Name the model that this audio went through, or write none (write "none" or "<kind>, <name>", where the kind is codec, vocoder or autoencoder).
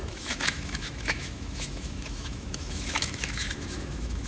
autoencoder, DAC-VAE